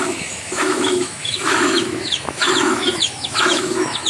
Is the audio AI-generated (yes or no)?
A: yes